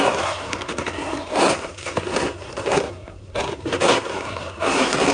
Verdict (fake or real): fake